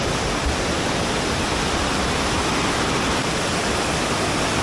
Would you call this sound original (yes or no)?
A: yes